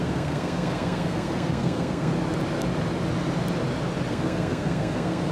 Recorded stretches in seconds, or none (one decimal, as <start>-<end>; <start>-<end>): 2.1-4.1